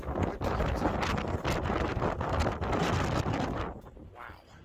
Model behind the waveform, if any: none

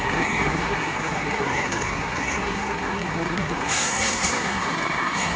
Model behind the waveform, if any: codec, SNAC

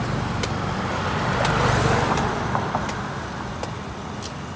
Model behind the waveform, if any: none